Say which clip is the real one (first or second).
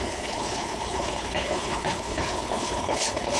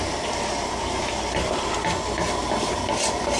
second